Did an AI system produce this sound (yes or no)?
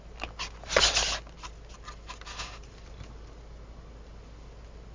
no